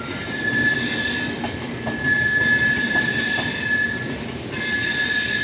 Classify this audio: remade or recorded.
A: recorded